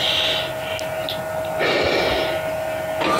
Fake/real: real